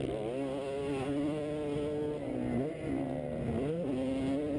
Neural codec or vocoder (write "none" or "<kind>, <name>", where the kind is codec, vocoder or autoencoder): none